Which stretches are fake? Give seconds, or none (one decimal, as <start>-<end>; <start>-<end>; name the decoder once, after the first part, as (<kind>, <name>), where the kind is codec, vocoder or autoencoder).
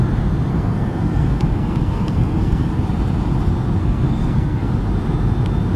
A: 0.5-2.7 (codec, SNAC); 3.8-4.7